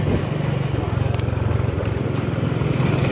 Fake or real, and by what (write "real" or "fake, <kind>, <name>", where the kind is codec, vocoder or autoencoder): fake, vocoder, BigVGAN v2